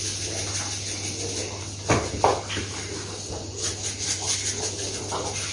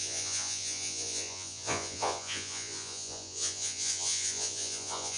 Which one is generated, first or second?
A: second